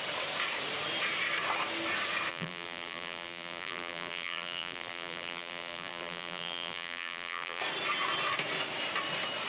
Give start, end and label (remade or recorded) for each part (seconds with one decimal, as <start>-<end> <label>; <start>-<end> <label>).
0.0-2.3 recorded; 2.3-7.6 remade; 7.6-9.5 recorded